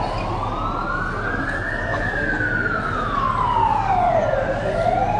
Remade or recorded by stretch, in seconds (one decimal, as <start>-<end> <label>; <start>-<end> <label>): 0.0-5.2 recorded